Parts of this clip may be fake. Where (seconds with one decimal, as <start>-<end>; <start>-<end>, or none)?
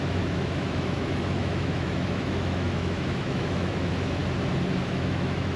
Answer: 0.0-4.2; 4.8-5.6